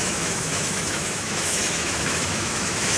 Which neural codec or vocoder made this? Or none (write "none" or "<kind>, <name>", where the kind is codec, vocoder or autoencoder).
autoencoder, DAC-VAE